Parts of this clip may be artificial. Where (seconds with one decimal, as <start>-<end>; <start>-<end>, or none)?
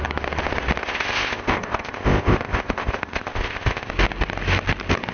0.8-3.9